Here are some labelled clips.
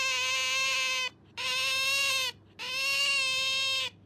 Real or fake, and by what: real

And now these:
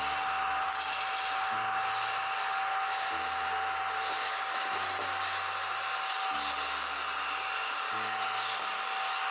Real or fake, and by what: real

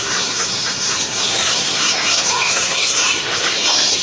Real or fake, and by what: fake, codec, SNAC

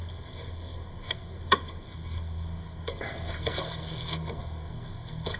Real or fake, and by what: fake, codec, SNAC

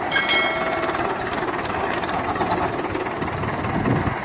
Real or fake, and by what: real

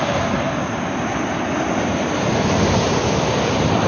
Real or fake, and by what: real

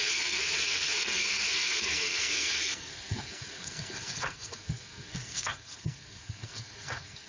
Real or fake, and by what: fake, codec, SNAC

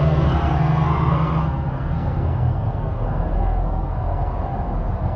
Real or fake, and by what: fake, codec, SNAC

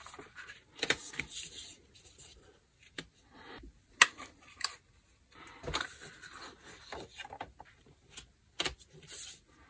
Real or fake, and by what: real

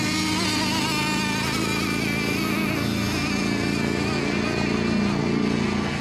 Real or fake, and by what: real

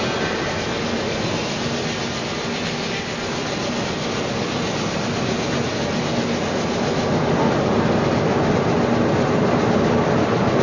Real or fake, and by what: real